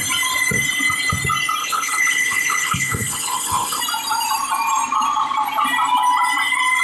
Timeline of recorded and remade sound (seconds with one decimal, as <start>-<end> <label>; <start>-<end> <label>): 0.0-1.6 recorded; 1.6-3.8 remade; 3.8-6.8 recorded